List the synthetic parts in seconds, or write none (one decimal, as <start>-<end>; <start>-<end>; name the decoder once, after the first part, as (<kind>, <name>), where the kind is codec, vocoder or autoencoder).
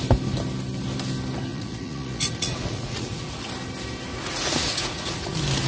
1.5-3.5 (vocoder, Vocos); 4.1-5.3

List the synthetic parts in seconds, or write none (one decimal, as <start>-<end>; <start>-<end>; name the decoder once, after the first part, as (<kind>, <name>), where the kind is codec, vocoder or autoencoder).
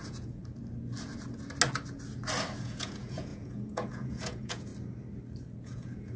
0.0-0.4 (vocoder, Vocos); 2.6-4.7; 5.6-6.2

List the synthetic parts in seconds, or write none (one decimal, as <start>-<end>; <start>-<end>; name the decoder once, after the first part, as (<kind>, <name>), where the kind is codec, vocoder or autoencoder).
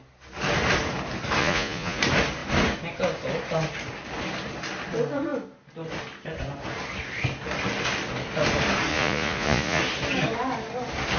1.4-2.0 (vocoder, Vocos); 8.9-9.8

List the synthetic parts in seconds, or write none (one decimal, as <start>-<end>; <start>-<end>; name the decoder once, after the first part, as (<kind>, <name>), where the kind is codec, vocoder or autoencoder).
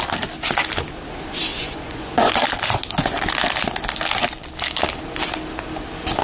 1.5-2.3 (vocoder, Vocos)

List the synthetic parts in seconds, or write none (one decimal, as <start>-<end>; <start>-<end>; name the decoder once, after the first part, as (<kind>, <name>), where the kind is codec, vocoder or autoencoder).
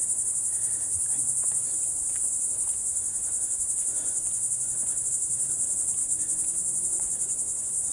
0.9-5.1 (vocoder, Vocos); 6.0-7.9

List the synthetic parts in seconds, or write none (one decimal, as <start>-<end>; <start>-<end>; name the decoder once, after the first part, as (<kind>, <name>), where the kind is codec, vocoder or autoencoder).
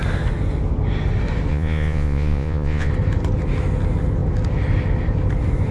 1.5-2.9 (vocoder, Vocos)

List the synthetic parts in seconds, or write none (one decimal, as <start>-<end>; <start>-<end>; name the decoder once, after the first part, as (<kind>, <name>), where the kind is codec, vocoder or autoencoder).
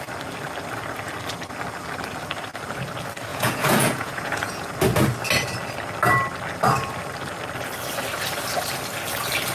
3.3-4.7 (vocoder, Vocos)